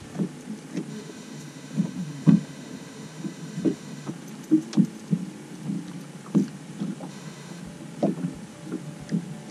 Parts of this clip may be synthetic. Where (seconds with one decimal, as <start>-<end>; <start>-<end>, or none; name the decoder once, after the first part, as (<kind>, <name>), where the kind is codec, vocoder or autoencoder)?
0.9-4.1 (autoencoder, DAC-VAE); 7.1-7.6